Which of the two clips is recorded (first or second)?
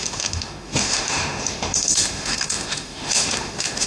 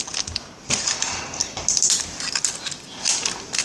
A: second